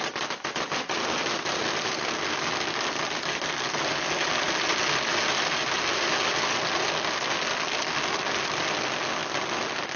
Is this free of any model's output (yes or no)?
yes